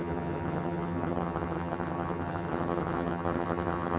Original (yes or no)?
no